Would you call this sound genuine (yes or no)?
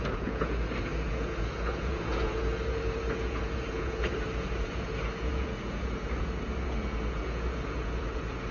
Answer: no